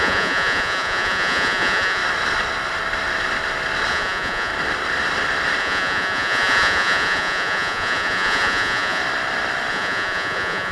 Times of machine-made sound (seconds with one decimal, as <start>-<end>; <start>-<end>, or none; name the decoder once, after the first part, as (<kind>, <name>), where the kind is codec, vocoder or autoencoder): 0.0-2.0 (vocoder, Vocos); 3.9-4.5; 5.6-9.0; 9.7-10.7